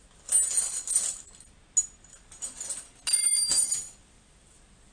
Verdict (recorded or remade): recorded